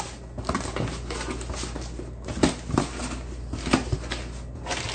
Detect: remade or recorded recorded